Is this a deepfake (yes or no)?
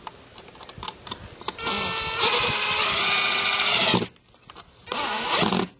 no